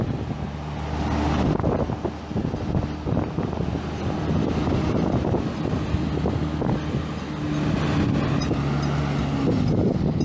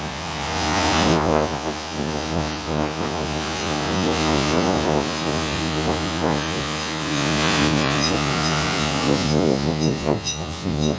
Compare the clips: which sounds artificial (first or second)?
second